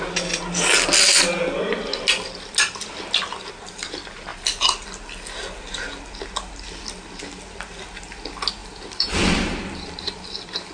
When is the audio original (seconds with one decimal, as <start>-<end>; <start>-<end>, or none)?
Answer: 0.0-8.6